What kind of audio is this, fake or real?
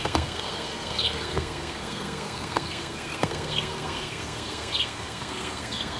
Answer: fake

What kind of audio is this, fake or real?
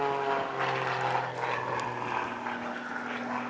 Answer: real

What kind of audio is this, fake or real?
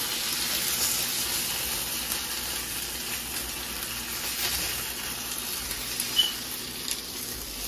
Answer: real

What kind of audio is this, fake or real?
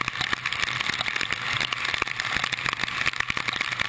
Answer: real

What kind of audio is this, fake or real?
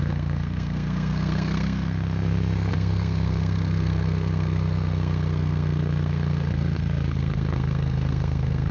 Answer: fake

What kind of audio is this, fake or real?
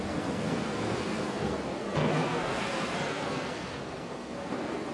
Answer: fake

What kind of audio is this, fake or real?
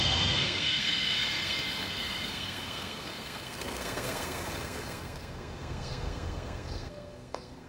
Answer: fake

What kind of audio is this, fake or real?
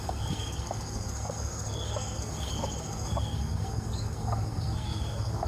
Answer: fake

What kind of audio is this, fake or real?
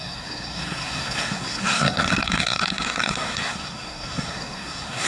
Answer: fake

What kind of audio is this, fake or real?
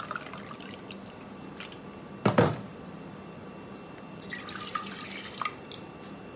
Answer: real